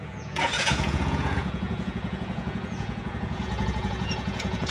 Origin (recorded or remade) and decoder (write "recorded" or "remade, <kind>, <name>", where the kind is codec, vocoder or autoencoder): remade, vocoder, Vocos